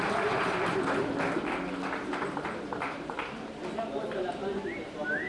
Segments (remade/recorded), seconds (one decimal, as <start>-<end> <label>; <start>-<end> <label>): 0.0-1.0 remade; 1.0-1.9 recorded; 1.9-3.6 remade; 3.6-4.3 recorded; 4.3-5.3 remade